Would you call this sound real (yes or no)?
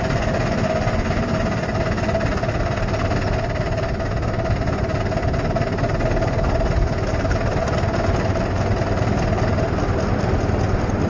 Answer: yes